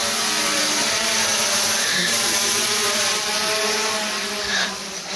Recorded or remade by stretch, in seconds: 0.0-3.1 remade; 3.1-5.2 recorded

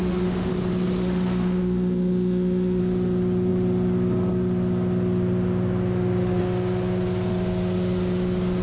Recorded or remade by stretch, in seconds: 0.0-0.5 remade; 0.5-1.0 recorded; 1.0-2.8 remade; 2.8-8.6 recorded

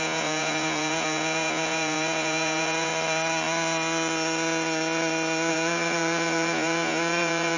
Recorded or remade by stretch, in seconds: 0.0-2.9 remade; 2.9-5.5 recorded; 5.5-7.6 remade

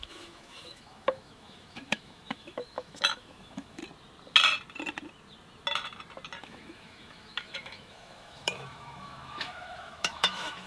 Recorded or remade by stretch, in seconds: 0.0-3.8 remade; 3.8-6.4 recorded; 6.4-10.7 remade

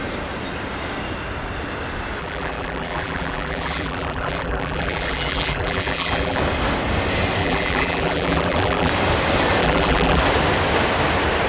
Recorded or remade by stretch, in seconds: 0.0-2.2 recorded; 2.2-6.4 remade; 6.4-7.4 recorded; 7.4-8.9 remade; 8.9-9.6 recorded; 9.6-10.2 remade; 10.2-11.5 recorded